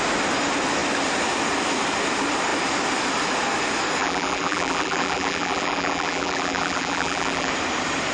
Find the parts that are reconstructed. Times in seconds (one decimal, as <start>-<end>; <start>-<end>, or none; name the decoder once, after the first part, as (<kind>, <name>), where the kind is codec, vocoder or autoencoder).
4.0-7.5 (vocoder, BigVGAN v2)